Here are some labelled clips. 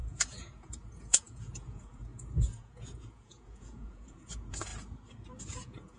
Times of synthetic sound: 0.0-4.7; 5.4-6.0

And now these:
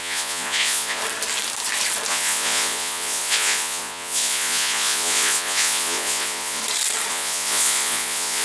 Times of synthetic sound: 0.0-1.0; 2.1-6.6; 7.1-8.4

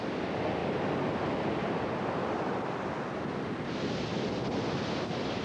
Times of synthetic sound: none

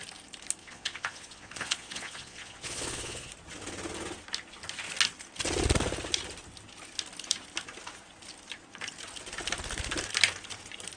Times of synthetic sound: 0.6-3.3